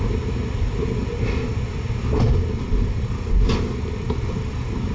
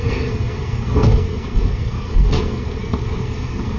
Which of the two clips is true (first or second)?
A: first